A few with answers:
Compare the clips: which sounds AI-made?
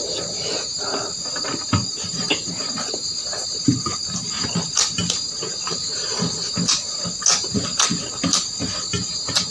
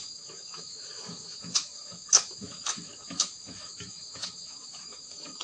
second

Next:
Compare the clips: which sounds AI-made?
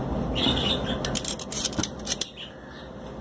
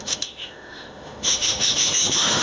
second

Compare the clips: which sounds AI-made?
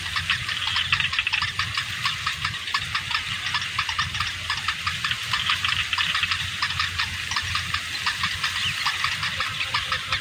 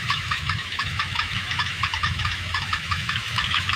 second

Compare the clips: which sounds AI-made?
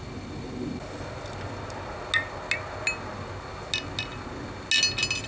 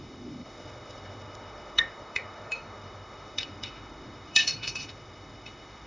second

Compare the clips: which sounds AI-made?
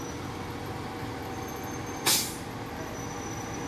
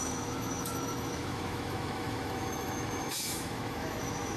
second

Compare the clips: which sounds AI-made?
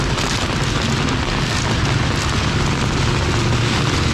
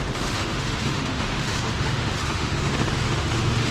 second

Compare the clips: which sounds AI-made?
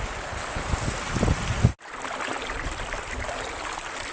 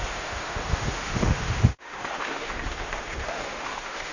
second